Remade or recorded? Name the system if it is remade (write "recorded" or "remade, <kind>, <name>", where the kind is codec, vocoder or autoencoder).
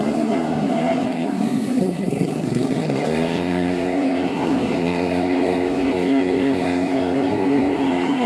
remade, codec, SNAC